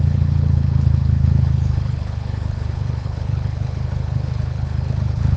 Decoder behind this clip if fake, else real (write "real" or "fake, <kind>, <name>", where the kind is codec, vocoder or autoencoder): fake, codec, HILCodec